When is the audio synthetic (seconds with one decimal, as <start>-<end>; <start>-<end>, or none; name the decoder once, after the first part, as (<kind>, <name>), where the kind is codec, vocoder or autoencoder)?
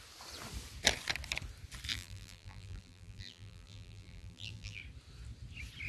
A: 1.9-4.8 (vocoder, BigVGAN v2)